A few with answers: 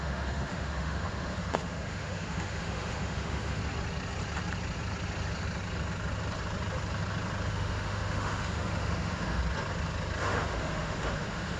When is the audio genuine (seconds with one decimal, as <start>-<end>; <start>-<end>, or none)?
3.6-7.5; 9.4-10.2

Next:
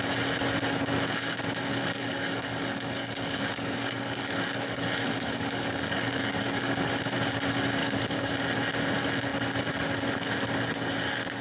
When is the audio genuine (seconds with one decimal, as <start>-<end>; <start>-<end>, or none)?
0.0-1.7; 6.9-7.8; 8.3-11.4

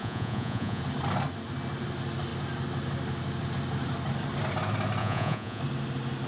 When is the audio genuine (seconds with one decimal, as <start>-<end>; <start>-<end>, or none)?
0.8-5.0; 5.6-6.3

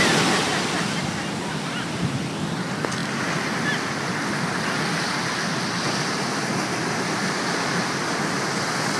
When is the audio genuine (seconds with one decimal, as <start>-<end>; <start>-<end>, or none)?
0.0-9.0

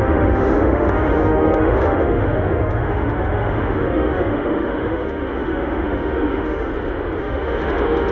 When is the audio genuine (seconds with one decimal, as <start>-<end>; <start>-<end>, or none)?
6.7-7.2

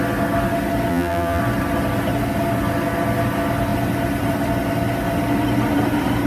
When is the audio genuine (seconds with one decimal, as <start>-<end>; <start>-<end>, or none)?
0.0-0.9; 1.4-6.3